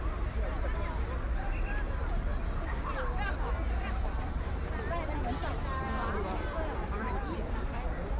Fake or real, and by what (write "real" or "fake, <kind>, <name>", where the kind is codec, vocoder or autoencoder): real